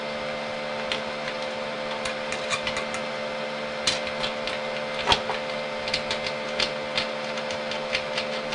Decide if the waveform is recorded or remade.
recorded